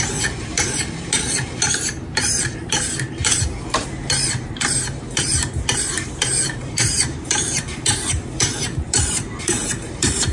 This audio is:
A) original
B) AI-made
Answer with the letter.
B